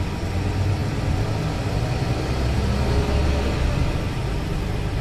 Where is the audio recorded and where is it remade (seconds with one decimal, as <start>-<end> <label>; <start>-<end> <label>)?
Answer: 0.0-5.0 recorded